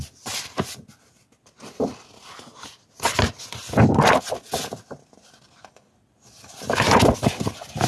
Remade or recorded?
recorded